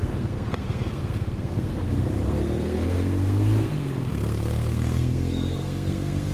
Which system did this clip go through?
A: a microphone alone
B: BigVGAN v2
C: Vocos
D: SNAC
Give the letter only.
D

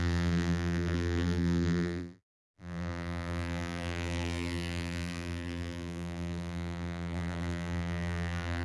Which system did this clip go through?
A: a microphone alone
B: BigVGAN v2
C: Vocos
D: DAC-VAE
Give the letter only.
B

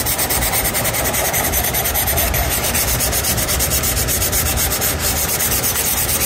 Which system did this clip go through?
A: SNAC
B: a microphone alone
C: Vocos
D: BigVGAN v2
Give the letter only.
D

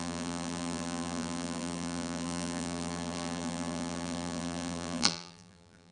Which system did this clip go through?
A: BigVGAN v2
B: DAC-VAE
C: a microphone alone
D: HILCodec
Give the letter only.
A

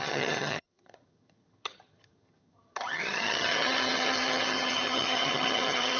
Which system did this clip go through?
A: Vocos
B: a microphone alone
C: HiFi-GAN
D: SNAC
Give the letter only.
C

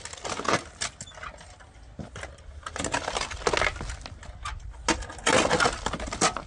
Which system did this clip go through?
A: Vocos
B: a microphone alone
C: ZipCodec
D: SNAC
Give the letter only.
B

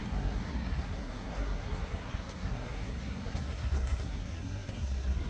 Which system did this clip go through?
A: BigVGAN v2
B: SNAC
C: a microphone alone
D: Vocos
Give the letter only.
B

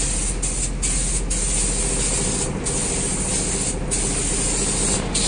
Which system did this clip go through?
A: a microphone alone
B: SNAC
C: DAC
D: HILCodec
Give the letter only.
A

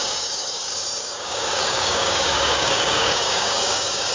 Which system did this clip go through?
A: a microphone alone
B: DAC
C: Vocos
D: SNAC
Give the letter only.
B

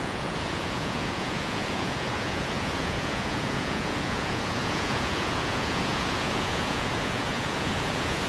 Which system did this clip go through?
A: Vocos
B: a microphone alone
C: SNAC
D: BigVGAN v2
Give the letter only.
A